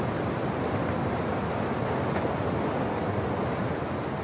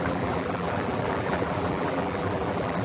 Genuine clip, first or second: first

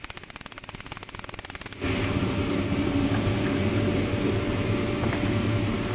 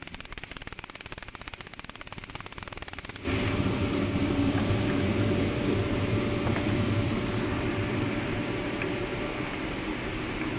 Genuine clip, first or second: first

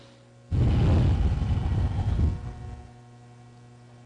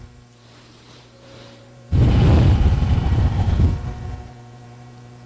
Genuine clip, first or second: first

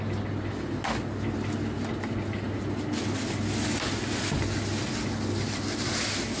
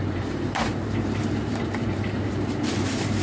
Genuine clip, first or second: first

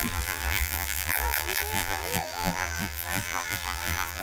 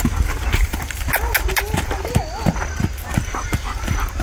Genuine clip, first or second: second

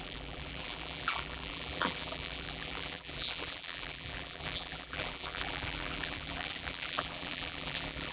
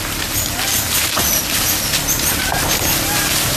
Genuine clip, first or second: second